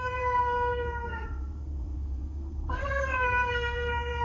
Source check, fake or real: fake